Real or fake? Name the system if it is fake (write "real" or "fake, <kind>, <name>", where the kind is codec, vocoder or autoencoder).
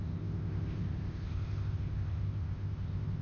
fake, codec, ZipCodec